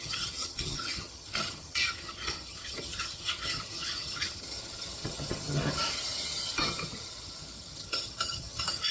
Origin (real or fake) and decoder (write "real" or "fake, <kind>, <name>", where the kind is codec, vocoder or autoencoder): fake, vocoder, HiFi-GAN